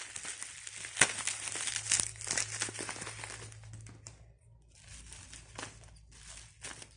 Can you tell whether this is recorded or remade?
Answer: recorded